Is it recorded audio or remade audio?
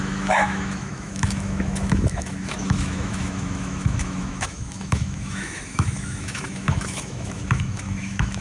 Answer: remade